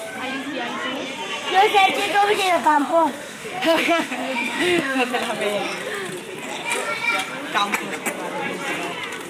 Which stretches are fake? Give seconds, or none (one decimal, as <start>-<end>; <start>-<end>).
2.0-5.1